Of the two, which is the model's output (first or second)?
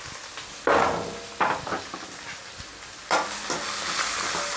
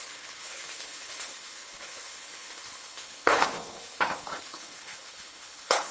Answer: second